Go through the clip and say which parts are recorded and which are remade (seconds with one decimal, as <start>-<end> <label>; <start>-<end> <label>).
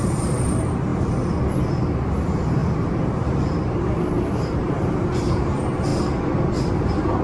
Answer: 0.0-0.9 remade; 0.9-1.7 recorded; 1.7-5.9 remade; 5.9-6.7 recorded; 6.7-7.2 remade